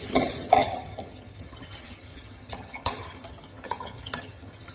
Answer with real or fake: fake